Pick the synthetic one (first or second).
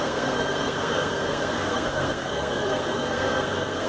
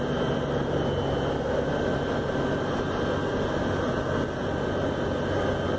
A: first